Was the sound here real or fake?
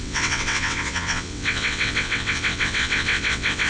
fake